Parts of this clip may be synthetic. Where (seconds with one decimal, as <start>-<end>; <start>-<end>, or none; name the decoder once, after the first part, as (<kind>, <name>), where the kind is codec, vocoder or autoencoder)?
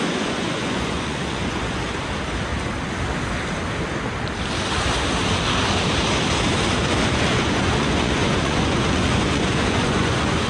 0.0-1.8 (vocoder, Vocos); 6.8-10.5